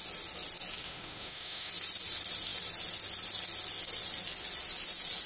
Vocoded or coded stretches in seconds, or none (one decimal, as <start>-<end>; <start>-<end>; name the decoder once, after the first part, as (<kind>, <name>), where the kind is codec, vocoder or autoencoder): 0.8-1.7 (autoencoder, DAC-VAE)